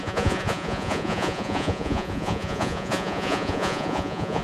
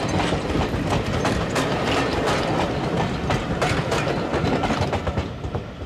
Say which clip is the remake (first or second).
first